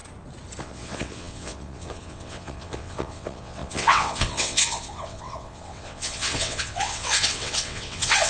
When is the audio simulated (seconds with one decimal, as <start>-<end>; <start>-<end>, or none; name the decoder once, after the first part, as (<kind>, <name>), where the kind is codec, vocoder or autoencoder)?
0.6-8.3 (vocoder, WaveNeXt)

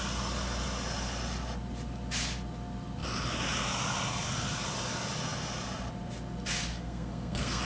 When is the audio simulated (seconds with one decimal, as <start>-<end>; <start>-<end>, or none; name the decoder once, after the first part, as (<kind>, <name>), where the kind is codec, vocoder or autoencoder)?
6.7-7.6 (codec, SNAC)

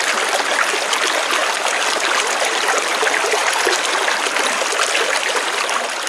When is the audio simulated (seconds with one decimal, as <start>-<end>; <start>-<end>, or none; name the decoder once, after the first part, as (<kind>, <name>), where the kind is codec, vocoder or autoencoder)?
none